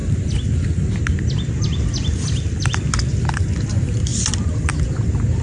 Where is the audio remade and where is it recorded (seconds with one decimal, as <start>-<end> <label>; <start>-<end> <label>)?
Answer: 0.0-5.4 recorded